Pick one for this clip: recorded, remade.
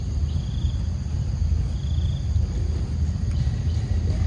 recorded